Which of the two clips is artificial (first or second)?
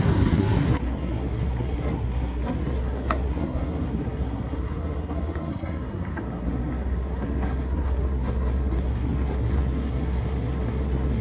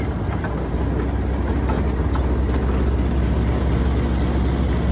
first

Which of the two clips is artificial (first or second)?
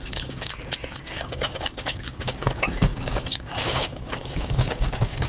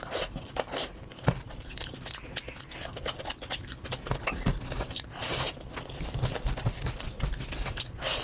first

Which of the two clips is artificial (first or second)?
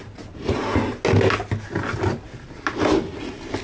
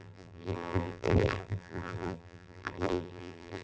second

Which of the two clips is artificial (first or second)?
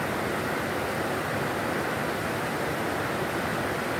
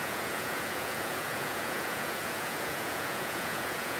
second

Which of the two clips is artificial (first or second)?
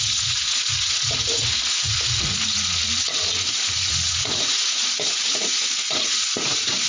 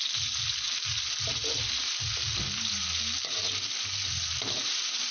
first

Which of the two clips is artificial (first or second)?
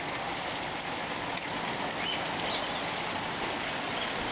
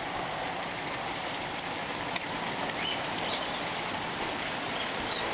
second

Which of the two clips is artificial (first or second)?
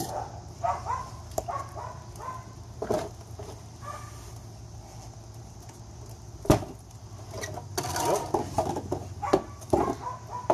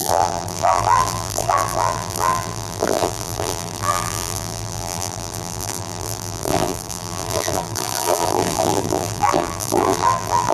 second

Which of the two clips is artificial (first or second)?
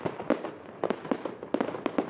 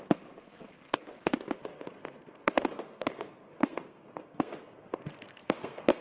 second